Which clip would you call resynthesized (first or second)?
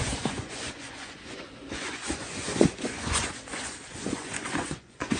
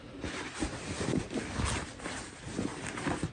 first